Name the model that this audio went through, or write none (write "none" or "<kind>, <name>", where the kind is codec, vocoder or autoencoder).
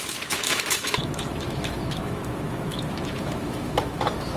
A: autoencoder, DAC-VAE